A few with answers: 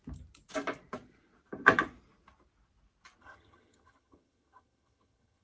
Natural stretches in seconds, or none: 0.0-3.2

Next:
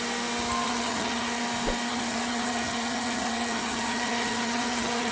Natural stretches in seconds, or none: 0.0-0.6; 1.4-1.9

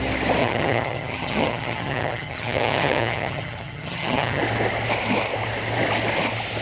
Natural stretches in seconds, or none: 0.0-0.4; 4.4-6.6

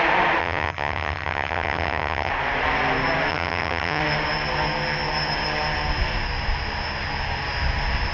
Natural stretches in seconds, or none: 0.0-0.4; 2.3-3.3; 4.0-8.1